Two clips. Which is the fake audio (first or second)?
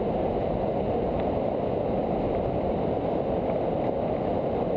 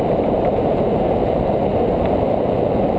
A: second